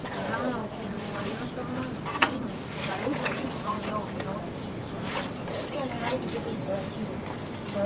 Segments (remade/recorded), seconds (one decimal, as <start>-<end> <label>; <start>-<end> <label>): 0.0-0.6 recorded; 0.6-1.5 remade; 1.5-2.1 recorded; 2.1-3.9 remade; 3.9-7.9 recorded